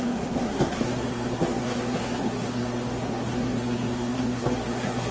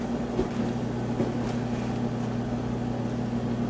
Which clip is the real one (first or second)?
second